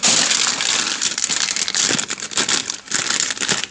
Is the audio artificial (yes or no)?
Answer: no